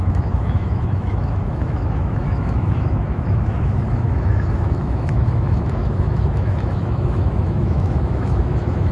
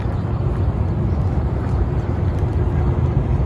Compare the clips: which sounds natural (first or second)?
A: second